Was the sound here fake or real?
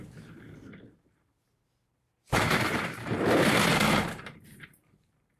fake